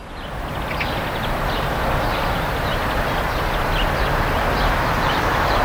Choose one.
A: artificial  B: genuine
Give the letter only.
B